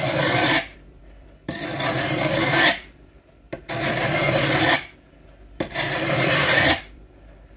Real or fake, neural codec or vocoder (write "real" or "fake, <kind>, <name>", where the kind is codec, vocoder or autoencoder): fake, vocoder, BigVGAN v2